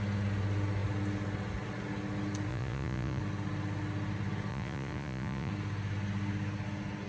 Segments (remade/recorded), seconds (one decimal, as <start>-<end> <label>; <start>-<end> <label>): 0.0-2.5 recorded; 2.5-3.2 remade; 3.2-4.5 recorded; 4.5-5.5 remade; 5.5-7.1 recorded